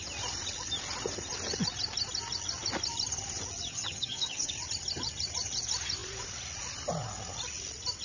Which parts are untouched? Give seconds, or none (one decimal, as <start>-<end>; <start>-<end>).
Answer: 0.0-3.7; 4.5-8.0